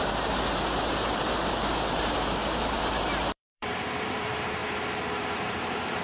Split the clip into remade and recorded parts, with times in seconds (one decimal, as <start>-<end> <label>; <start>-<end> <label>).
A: 0.0-4.6 remade; 4.6-5.2 recorded; 5.2-6.0 remade